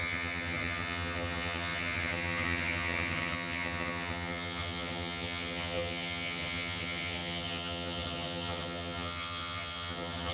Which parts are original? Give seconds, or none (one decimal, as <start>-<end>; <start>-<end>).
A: none

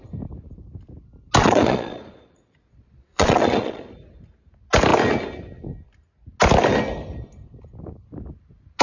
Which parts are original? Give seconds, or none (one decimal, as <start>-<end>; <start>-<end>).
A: 0.0-1.4; 3.9-8.8

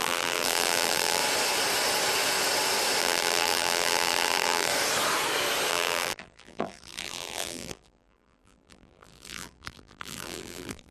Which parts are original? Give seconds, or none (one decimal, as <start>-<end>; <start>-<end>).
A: 1.2-3.0; 4.7-5.7